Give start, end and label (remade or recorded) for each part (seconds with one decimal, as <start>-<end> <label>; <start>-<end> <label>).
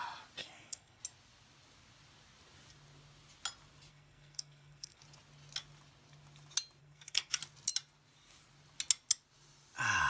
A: 0.0-0.4 recorded; 0.4-1.0 remade; 1.0-3.9 recorded; 3.9-5.0 remade; 5.0-6.8 recorded; 6.8-7.4 remade; 7.4-10.1 recorded